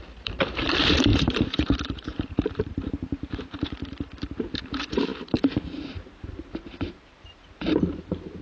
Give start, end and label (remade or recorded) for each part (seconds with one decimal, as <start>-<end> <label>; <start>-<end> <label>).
0.0-8.4 remade